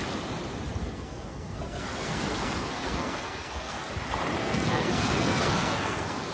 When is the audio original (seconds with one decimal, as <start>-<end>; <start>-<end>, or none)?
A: 0.0-0.8; 3.9-4.4